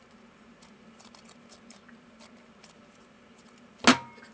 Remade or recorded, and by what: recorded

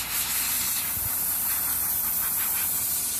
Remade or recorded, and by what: recorded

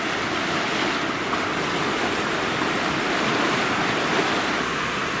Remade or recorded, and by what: recorded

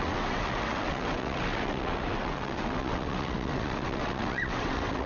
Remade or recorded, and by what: remade, vocoder, WaveNeXt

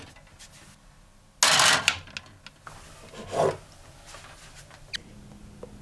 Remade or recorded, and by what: recorded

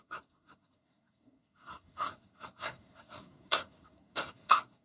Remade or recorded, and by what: remade, codec, SNAC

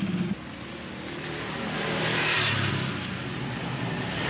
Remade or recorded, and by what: recorded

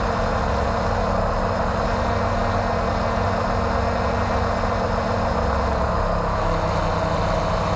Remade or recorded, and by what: recorded